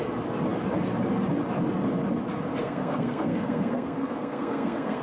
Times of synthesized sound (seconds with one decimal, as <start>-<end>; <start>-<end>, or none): 2.6-5.0